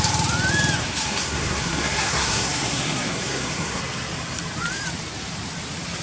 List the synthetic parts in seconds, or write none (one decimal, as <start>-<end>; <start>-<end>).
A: 0.8-3.8